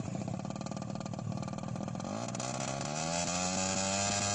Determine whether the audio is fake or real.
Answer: real